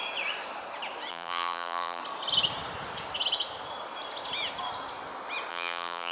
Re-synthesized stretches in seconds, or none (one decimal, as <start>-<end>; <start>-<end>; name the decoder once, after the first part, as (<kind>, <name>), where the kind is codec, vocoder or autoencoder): 1.1-2.0 (vocoder, BigVGAN v2); 5.5-6.1